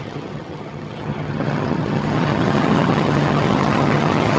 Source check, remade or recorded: remade